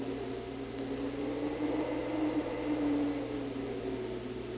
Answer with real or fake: real